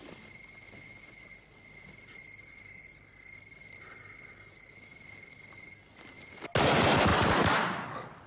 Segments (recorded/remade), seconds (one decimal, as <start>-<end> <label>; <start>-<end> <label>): 0.0-7.1 recorded; 7.1-7.9 remade; 7.9-8.3 recorded